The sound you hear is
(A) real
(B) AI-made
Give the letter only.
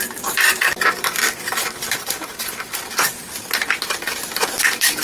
B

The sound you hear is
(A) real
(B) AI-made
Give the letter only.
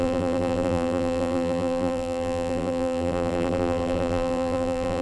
B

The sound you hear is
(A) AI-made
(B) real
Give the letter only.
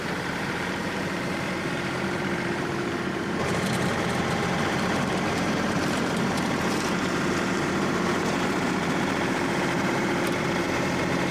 A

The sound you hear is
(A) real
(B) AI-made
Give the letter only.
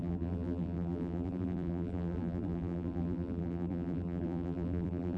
B